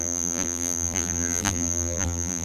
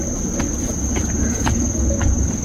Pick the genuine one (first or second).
second